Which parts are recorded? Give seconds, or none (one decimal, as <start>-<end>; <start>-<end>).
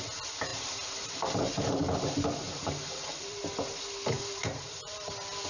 0.0-0.5; 1.7-2.5; 3.4-4.4; 5.1-5.5